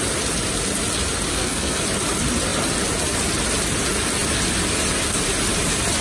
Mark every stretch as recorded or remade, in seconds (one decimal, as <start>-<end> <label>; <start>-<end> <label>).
0.0-1.3 recorded; 1.3-1.8 remade; 1.8-6.0 recorded